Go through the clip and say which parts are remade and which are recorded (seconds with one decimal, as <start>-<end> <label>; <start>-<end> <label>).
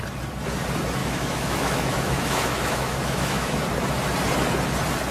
0.0-1.0 recorded; 1.0-3.6 remade; 3.6-5.1 recorded